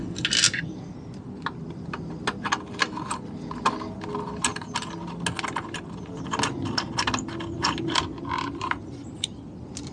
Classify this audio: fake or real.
real